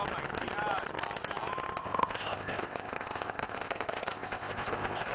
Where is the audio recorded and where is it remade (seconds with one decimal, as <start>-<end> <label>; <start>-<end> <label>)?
0.0-1.8 recorded; 1.8-5.1 remade